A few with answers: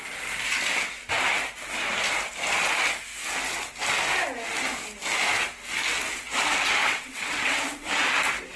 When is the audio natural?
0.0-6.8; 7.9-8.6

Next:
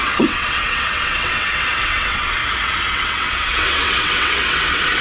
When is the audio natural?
2.4-2.9

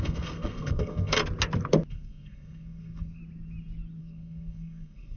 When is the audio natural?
1.2-1.9; 3.2-4.0

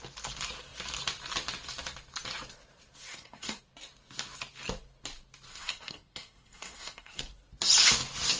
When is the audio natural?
0.0-3.1; 3.6-5.5; 7.2-8.4

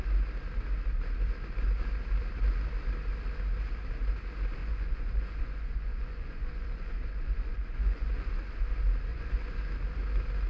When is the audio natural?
0.0-4.6; 8.3-9.1; 9.7-10.5

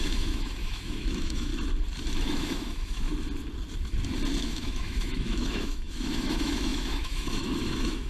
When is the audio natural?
1.5-2.2; 3.1-4.4

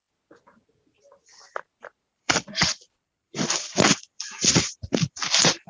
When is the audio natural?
0.0-2.1

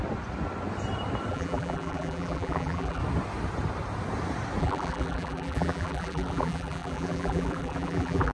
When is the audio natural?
0.0-1.3; 3.0-4.6